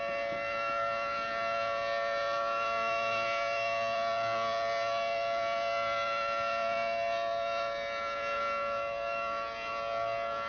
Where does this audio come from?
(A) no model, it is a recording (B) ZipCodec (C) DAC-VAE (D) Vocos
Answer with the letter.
A